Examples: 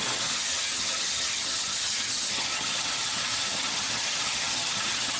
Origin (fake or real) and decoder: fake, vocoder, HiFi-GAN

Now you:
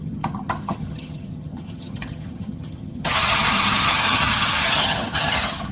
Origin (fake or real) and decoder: fake, vocoder, HiFi-GAN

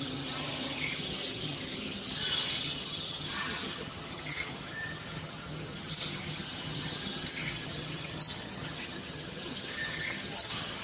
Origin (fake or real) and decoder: fake, vocoder, HiFi-GAN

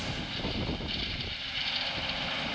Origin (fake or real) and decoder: real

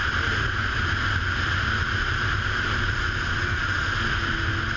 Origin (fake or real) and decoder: real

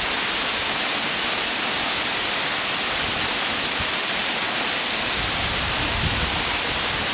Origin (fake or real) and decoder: real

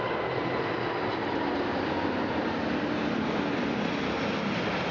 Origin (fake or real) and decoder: real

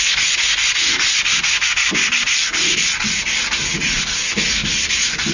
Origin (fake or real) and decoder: real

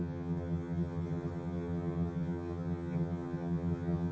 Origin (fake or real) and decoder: fake, vocoder, HiFi-GAN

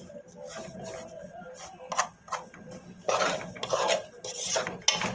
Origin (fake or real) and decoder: real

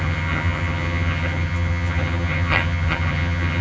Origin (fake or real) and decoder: fake, vocoder, HiFi-GAN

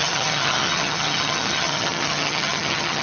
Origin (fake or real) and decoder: fake, vocoder, HiFi-GAN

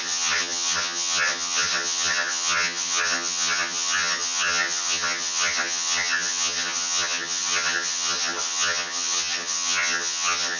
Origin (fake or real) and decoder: fake, vocoder, HiFi-GAN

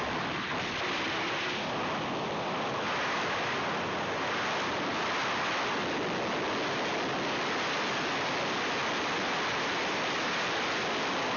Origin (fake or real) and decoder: real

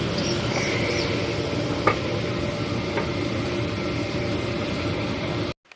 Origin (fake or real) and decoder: real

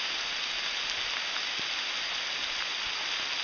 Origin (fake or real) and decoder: real